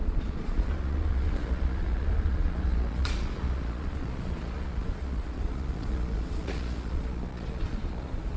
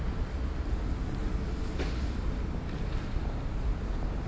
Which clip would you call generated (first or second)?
first